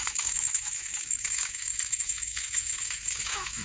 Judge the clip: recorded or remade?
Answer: remade